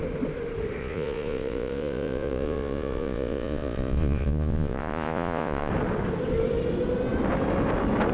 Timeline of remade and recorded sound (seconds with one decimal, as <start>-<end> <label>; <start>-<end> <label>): 0.0-0.8 recorded; 0.8-5.7 remade; 5.7-8.1 recorded